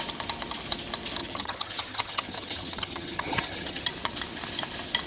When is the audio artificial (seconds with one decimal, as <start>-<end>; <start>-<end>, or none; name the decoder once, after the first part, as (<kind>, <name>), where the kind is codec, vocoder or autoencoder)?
1.2-3.9 (vocoder, HiFi-GAN)